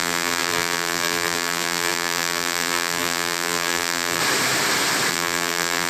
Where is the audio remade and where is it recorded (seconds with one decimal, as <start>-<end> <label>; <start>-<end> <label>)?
0.0-4.2 remade; 4.2-5.1 recorded; 5.1-5.9 remade